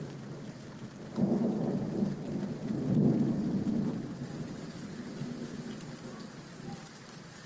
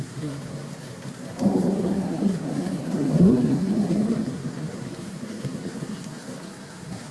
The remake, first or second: second